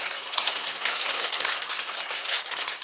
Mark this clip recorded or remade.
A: remade